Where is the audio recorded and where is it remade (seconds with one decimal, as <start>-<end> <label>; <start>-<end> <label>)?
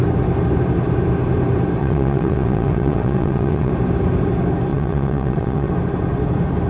0.0-1.8 recorded; 1.8-3.7 remade; 3.7-4.7 recorded; 4.7-5.7 remade; 5.7-6.7 recorded